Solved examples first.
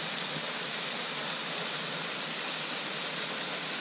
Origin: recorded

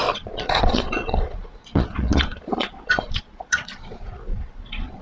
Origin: remade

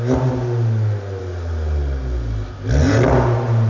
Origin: recorded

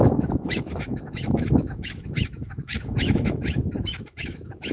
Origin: remade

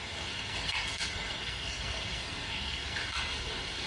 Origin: remade